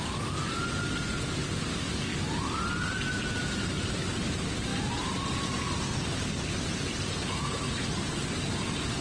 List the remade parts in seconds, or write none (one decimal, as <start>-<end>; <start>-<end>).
none